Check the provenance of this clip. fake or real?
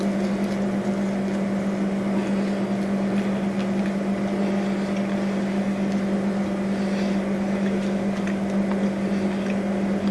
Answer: real